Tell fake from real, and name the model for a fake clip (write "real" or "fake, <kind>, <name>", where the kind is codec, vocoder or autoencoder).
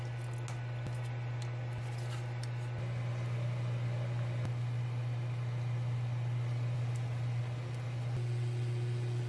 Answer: real